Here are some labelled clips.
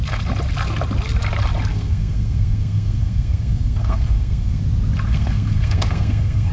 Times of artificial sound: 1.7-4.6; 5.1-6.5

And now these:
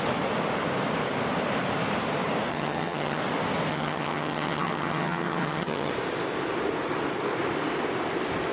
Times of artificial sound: 2.5-3.2; 3.7-5.9

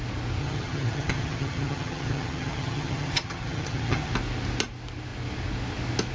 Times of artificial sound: 0.4-4.1